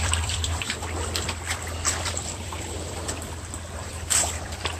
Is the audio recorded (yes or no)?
no